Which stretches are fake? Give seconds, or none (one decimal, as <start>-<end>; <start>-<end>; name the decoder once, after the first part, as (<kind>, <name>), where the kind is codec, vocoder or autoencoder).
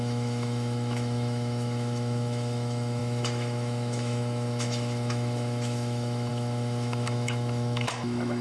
0.0-8.4 (autoencoder, DAC-VAE)